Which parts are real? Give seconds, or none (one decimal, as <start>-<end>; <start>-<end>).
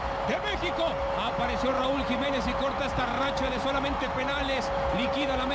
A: 0.0-5.5